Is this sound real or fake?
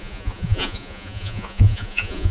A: fake